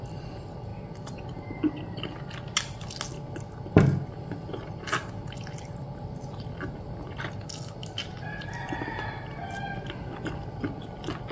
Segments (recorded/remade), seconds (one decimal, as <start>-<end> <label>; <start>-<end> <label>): 0.0-11.3 recorded